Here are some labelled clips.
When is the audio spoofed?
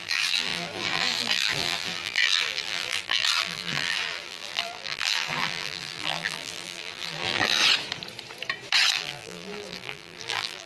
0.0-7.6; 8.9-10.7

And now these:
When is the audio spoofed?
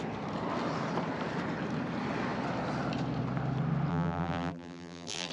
3.9-5.3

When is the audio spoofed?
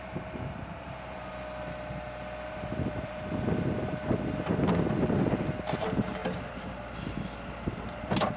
0.0-1.3; 2.5-6.2; 7.5-8.4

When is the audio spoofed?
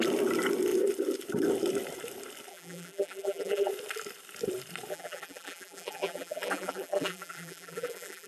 2.5-3.7; 4.9-8.3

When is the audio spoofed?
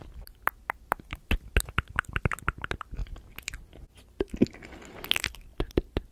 none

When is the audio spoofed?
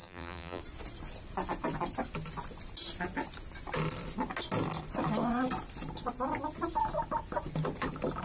0.0-0.6